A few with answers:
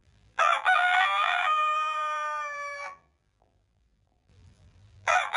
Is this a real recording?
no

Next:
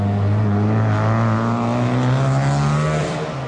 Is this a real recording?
yes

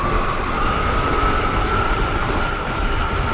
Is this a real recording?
yes